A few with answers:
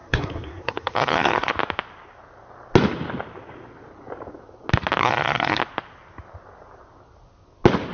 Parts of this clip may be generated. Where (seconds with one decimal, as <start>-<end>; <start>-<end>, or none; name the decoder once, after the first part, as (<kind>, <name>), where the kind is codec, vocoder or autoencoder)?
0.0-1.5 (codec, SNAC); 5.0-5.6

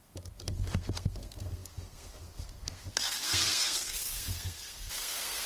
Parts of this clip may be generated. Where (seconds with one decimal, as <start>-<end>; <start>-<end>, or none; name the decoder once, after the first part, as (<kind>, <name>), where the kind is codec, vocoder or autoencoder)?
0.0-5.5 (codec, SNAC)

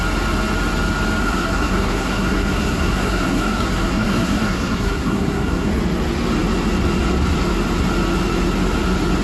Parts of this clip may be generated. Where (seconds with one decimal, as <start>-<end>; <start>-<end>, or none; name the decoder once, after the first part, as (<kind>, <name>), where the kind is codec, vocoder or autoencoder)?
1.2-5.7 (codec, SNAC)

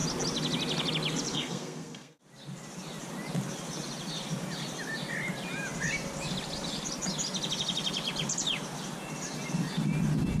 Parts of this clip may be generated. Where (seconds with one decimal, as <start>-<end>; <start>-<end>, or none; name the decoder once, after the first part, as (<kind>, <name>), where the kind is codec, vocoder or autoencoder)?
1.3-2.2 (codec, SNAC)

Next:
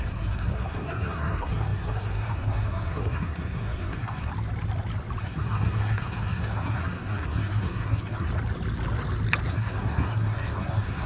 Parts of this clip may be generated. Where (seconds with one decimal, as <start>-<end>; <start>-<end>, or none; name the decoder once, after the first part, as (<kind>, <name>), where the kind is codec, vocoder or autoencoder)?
0.0-4.3 (codec, SNAC); 5.2-8.3; 9.5-11.1

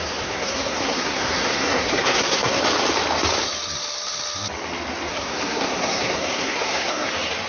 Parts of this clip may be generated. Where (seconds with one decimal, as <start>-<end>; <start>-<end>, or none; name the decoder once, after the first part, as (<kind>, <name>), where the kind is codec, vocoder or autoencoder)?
0.0-2.6 (codec, SNAC); 5.1-7.1

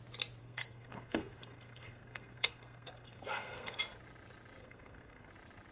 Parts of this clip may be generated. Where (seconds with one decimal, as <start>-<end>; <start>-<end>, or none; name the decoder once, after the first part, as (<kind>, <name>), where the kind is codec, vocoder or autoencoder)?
0.4-3.8 (codec, SNAC); 4.6-5.3